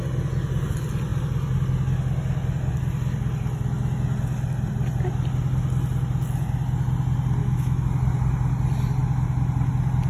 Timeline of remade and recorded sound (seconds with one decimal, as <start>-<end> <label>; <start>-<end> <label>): 0.0-7.4 recorded; 7.4-7.9 remade; 7.9-10.1 recorded